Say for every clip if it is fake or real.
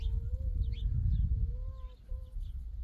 real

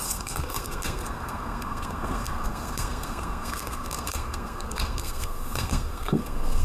fake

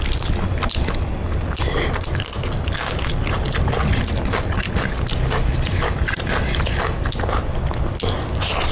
real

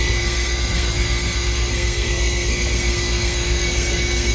fake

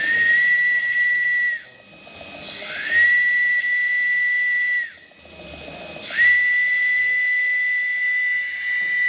real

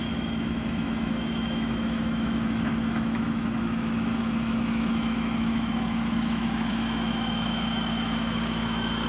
fake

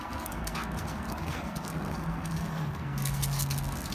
fake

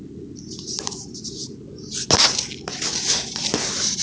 real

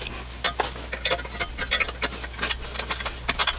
real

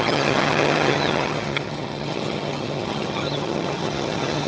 fake